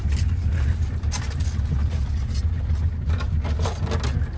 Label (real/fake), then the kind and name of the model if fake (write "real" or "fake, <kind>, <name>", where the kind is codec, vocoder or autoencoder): real